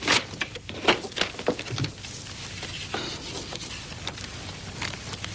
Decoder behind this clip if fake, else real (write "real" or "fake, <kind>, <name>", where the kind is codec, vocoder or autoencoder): real